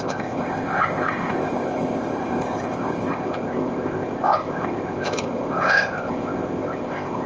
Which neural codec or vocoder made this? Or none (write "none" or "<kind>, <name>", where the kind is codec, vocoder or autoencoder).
codec, ZipCodec